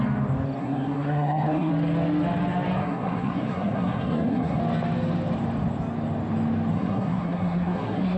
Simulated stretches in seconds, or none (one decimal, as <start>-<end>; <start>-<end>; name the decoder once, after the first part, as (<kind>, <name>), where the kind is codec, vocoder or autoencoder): 0.6-1.7 (codec, SNAC); 2.8-4.6; 6.7-8.2